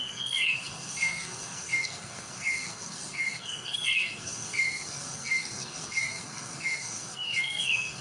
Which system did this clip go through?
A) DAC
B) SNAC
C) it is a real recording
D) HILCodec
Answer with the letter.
B